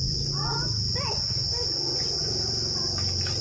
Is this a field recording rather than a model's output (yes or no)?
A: yes